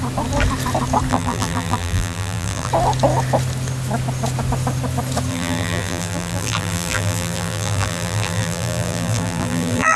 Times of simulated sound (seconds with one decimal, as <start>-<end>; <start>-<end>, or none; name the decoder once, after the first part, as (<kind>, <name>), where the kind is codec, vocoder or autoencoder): 1.1-2.7 (vocoder, BigVGAN v2); 5.3-10.0